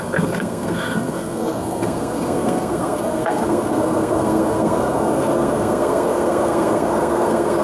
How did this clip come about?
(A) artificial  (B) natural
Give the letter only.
A